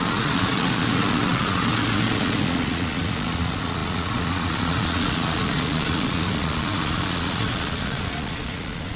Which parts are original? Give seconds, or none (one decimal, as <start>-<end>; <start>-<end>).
none

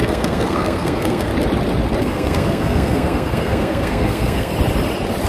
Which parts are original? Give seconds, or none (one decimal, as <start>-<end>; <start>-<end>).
1.3-2.0; 4.5-5.3

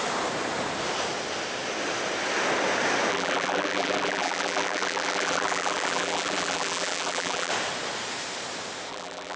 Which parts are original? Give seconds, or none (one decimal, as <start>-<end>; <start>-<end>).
0.0-3.1; 7.5-8.9

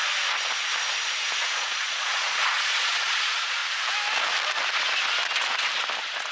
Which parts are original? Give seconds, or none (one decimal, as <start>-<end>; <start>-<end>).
0.0-1.4; 3.6-6.3

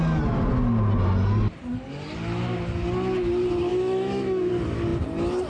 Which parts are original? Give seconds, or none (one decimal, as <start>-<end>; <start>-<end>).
0.0-3.7; 4.5-5.5

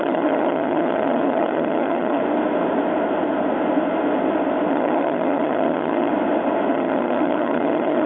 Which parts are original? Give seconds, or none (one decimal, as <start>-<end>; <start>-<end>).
2.2-4.7; 6.1-6.7